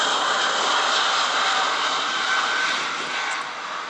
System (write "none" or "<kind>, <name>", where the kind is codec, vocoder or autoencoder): none